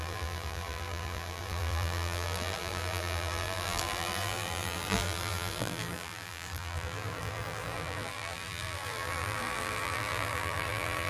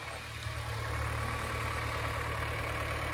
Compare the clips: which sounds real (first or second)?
second